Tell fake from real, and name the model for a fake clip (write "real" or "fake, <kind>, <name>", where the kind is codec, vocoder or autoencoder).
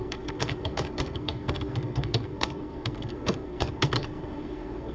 fake, codec, SNAC